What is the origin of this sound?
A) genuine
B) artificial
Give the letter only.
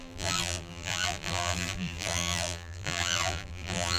B